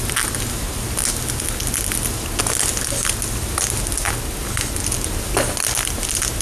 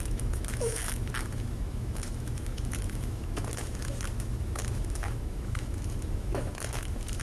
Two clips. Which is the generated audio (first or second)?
second